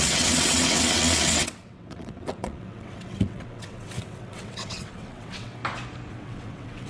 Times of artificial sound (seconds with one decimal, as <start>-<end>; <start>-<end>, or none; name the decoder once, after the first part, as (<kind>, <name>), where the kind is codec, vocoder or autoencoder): 0.0-5.6 (vocoder, WaveNeXt); 6.1-6.9